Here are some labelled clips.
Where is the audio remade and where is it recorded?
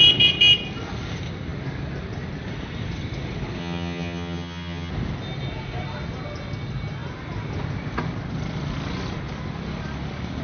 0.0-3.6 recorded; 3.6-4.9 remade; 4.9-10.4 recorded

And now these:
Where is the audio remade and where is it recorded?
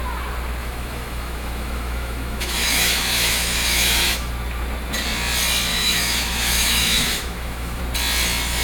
0.0-0.6 recorded; 0.6-4.3 remade; 4.3-5.7 recorded; 5.7-7.8 remade; 7.8-8.6 recorded